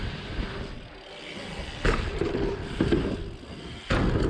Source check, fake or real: real